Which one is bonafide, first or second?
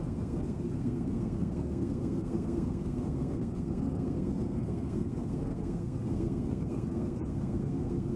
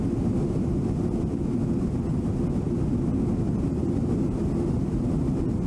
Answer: second